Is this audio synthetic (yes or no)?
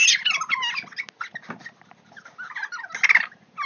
no